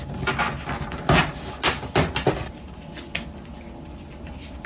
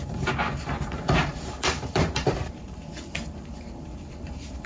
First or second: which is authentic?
first